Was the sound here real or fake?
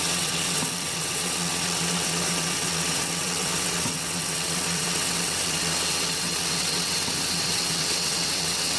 fake